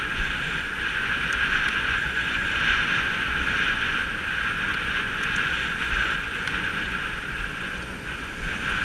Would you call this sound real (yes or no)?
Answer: no